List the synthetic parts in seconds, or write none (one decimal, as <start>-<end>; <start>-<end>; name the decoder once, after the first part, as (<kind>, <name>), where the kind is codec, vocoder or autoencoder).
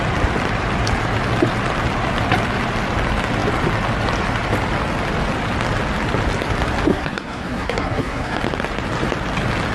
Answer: 6.9-8.4 (codec, SNAC)